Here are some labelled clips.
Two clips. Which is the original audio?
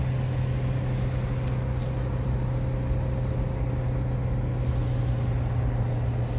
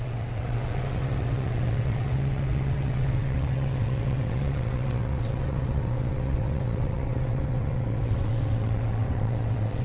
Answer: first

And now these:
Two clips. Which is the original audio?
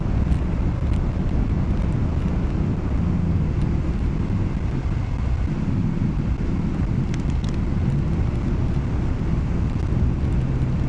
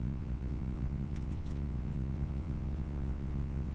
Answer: first